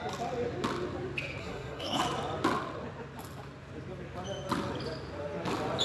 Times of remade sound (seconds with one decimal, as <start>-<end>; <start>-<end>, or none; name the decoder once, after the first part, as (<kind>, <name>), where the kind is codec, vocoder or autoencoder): 1.4-2.0 (codec, SNAC)